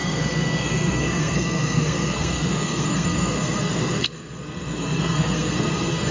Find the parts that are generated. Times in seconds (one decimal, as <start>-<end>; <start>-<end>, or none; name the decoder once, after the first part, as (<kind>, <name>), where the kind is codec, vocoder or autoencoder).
0.0-6.1 (codec, SNAC)